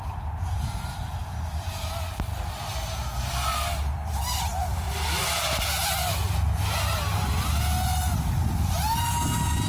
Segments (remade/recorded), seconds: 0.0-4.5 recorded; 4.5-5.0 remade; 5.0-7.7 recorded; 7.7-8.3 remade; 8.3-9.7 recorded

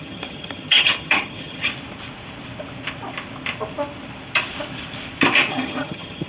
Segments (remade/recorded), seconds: 0.0-1.7 remade; 1.7-5.5 recorded; 5.5-6.3 remade

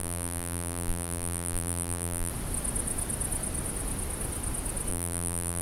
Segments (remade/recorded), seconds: 0.0-2.3 remade; 2.3-4.9 recorded; 4.9-5.6 remade

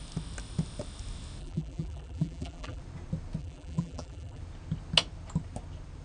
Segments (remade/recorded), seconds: 0.0-1.4 recorded; 1.4-2.8 remade; 2.8-3.4 recorded; 3.4-4.4 remade; 4.4-6.0 recorded

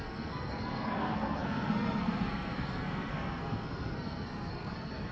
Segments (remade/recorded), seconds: 0.0-5.1 remade

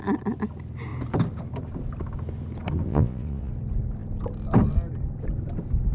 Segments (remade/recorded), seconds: 0.0-2.9 recorded; 2.9-3.5 remade; 3.5-5.9 recorded

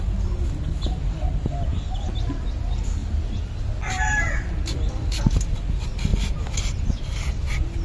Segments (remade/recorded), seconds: 0.0-7.8 recorded

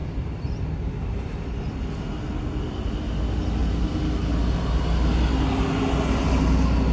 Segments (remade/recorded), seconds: 0.0-0.7 remade; 0.7-6.9 recorded